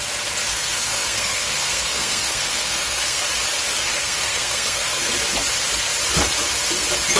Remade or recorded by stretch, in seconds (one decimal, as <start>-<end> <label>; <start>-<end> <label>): 0.0-0.5 recorded; 0.5-3.2 remade; 3.2-3.7 recorded; 3.7-5.1 remade; 5.1-7.2 recorded